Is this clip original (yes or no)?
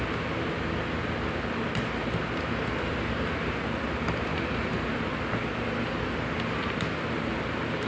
yes